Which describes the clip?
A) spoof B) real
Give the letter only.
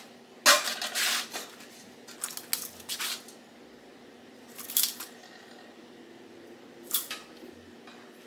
B